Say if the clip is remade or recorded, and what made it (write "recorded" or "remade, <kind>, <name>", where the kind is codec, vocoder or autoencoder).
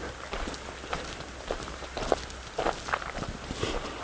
recorded